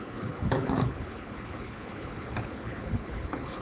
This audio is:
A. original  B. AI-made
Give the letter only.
B